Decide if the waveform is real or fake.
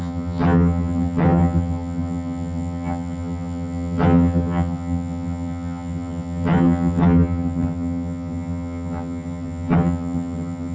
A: fake